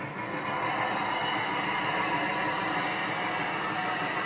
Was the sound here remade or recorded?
recorded